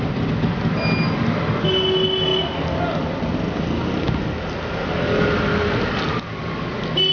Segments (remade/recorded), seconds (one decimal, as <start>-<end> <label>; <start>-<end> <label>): 0.0-7.1 recorded